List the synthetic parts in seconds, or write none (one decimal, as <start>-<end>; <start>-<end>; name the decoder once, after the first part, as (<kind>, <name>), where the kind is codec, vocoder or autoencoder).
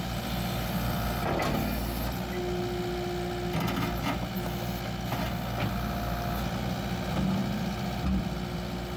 none